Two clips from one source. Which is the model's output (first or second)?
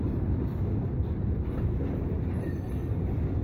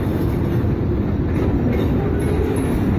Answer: first